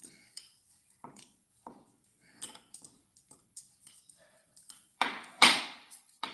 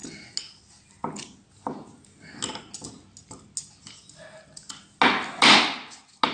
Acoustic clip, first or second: second